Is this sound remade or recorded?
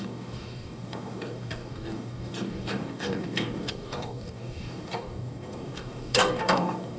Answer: remade